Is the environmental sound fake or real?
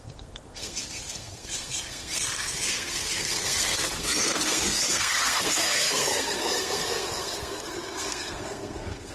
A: fake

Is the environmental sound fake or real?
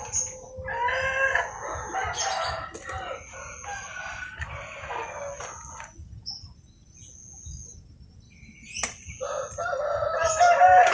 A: real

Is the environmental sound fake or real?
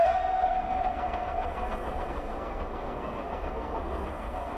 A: fake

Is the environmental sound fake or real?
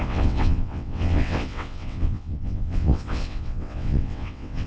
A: fake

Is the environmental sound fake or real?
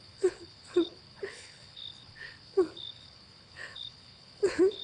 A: fake